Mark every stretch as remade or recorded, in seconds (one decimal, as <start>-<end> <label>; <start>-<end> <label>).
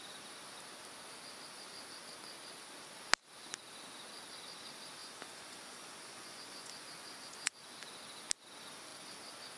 0.0-5.0 recorded; 5.0-7.5 remade; 7.5-9.6 recorded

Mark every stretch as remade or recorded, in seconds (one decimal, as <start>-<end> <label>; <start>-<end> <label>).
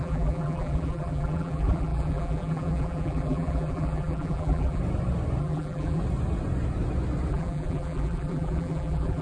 0.0-4.8 remade; 4.8-5.4 recorded; 5.4-6.0 remade; 6.0-7.3 recorded; 7.3-9.2 remade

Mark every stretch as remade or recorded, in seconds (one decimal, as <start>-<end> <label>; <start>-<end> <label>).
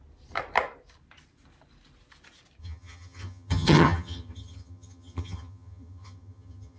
0.0-2.6 recorded; 2.6-6.8 remade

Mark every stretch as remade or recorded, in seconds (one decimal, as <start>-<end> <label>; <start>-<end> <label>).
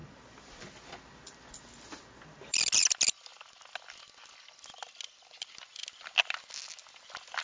0.0-7.4 recorded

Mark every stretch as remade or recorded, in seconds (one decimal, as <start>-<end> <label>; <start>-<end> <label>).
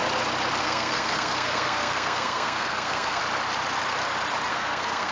0.0-0.6 recorded; 0.6-3.2 remade; 3.2-4.5 recorded; 4.5-5.1 remade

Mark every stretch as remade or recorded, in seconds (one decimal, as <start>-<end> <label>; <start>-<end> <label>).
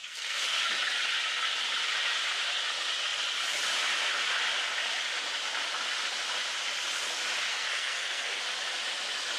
0.0-0.6 remade; 0.6-7.5 recorded; 7.5-8.4 remade; 8.4-9.4 recorded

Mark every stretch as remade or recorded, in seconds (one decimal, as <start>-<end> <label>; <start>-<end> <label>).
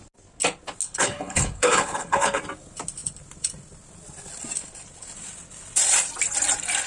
0.0-0.8 recorded; 0.8-2.4 remade; 2.4-6.9 recorded